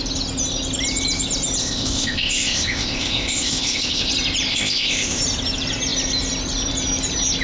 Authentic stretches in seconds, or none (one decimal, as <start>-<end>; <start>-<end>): 0.0-1.6; 4.1-4.5; 5.2-7.4